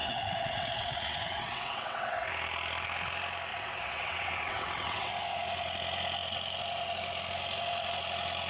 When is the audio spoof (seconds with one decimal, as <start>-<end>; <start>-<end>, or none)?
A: 0.0-2.3; 3.5-5.1